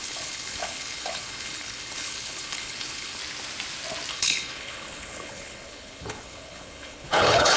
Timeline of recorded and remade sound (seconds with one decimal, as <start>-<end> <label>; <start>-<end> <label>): 0.0-3.2 remade; 3.2-4.1 recorded; 4.1-7.6 remade